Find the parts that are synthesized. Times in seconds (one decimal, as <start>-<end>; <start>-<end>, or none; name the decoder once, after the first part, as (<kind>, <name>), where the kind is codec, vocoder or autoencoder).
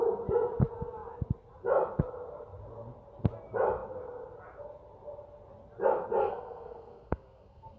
6.2-7.8 (codec, SNAC)